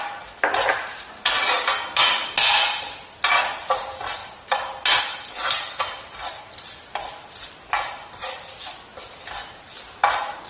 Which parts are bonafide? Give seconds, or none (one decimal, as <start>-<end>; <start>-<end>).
0.0-10.5